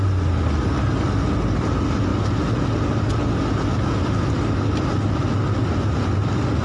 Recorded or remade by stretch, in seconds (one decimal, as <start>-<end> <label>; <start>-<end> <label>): 0.0-6.6 recorded